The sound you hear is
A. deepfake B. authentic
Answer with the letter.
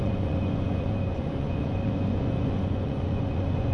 A